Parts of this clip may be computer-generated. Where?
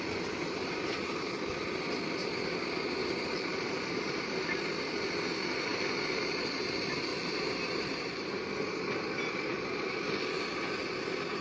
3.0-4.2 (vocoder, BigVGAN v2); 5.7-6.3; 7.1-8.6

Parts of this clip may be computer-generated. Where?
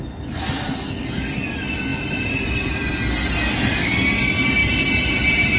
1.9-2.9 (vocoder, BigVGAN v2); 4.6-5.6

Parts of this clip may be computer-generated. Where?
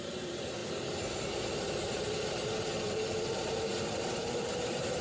0.0-0.6 (vocoder, BigVGAN v2); 1.2-5.0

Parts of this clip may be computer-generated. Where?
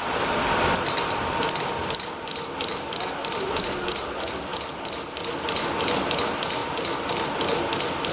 none